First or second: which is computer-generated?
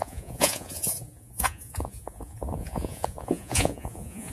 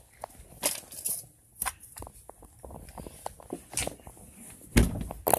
first